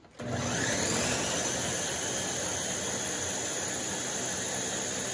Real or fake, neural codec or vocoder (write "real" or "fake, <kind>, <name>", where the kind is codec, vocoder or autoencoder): real